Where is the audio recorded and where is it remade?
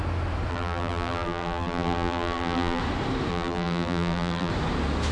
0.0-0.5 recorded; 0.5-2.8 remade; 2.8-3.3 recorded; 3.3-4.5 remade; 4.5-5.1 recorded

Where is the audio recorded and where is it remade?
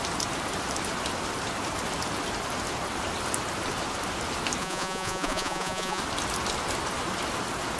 0.0-4.6 recorded; 4.6-6.0 remade; 6.0-7.8 recorded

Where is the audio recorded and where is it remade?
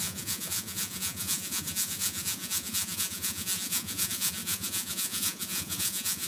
0.0-6.3 remade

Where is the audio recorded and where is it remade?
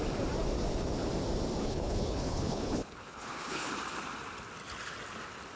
0.0-1.6 recorded; 1.6-3.7 remade; 3.7-5.6 recorded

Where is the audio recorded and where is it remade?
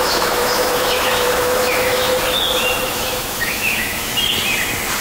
0.0-2.1 remade; 2.1-2.9 recorded; 2.9-4.1 remade; 4.1-5.0 recorded